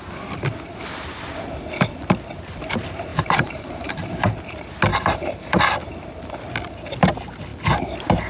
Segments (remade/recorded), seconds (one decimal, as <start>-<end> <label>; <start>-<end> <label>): 0.0-3.1 recorded; 3.1-4.1 remade; 4.1-4.9 recorded; 4.9-5.6 remade; 5.6-8.3 recorded